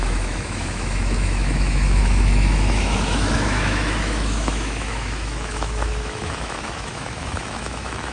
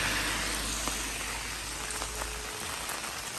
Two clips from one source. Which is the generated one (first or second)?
first